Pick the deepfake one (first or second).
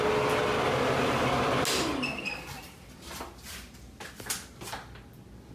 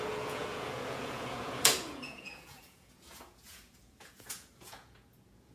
second